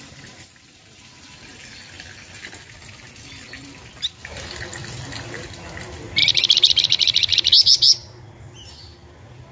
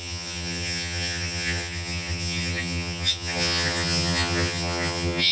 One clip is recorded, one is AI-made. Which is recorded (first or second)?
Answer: first